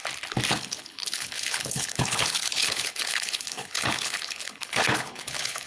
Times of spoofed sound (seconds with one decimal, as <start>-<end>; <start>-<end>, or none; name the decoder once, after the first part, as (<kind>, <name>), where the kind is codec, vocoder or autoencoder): 0.5-5.7 (codec, HILCodec)